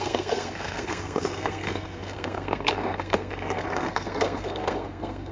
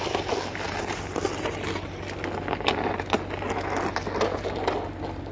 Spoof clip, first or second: first